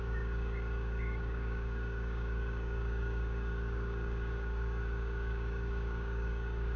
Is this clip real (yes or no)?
no